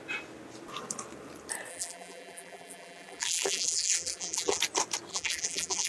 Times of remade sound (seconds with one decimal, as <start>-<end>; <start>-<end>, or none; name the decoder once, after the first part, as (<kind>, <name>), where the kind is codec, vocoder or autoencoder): 1.7-4.6 (vocoder, BigVGAN v2); 5.1-5.9